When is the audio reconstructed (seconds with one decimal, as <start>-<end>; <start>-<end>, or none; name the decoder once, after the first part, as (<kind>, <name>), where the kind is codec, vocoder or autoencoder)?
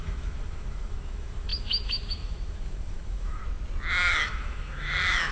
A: 0.0-3.4 (autoencoder, DAC-VAE); 4.1-5.3